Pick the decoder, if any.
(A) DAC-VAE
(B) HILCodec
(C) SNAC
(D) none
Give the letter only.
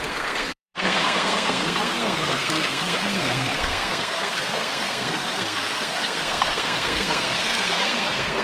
C